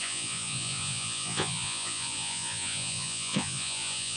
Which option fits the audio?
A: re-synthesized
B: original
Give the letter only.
A